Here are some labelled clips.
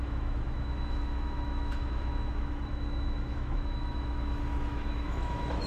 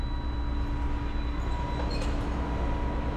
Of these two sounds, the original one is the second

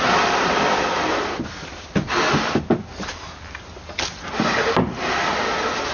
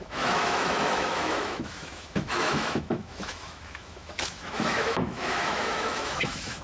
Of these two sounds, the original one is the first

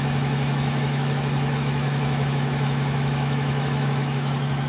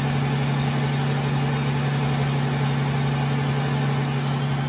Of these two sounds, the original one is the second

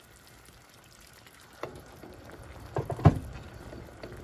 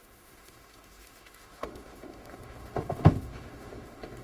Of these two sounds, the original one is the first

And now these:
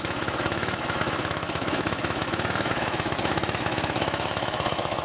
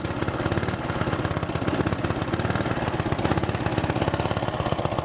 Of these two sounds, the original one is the second